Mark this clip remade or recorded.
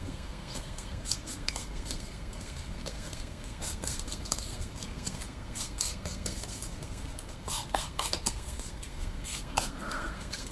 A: remade